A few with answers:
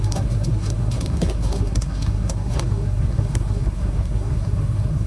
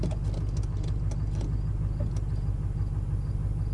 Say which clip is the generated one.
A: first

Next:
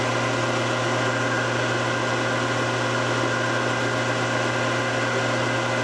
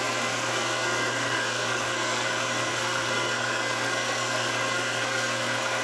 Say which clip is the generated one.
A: second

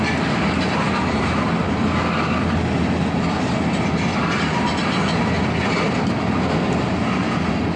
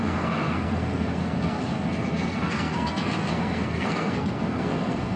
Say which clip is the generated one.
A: second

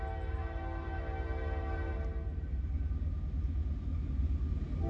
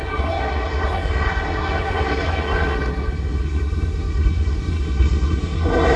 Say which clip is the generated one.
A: second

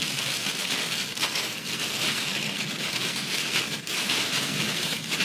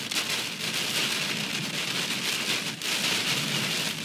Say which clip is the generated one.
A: first